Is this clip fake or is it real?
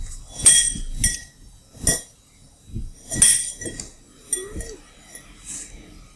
real